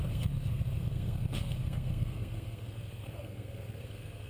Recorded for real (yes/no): no